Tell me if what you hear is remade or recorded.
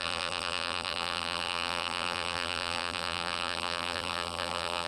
remade